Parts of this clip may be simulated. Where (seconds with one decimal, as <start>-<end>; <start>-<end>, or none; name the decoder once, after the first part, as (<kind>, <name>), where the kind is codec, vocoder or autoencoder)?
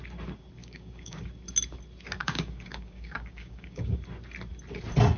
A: 0.6-1.3 (codec, DAC); 2.2-4.0